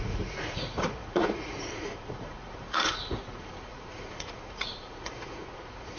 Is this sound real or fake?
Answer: fake